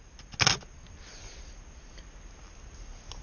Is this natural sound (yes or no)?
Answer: yes